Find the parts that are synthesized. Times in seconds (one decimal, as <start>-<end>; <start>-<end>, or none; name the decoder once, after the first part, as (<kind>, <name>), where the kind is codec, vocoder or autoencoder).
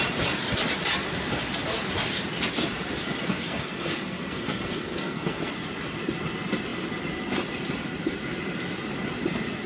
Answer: 3.3-5.5 (codec, SNAC)